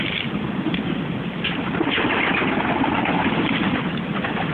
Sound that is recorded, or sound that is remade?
recorded